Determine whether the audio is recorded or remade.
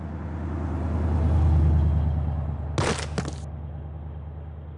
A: recorded